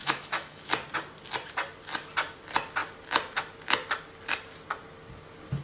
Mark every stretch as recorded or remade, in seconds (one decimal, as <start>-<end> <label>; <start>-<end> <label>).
0.0-0.7 remade; 0.7-5.6 recorded